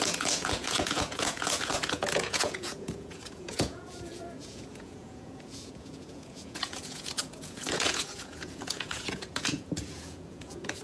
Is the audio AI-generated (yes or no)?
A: yes